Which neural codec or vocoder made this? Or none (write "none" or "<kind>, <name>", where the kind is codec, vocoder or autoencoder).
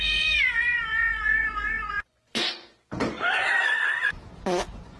vocoder, Vocos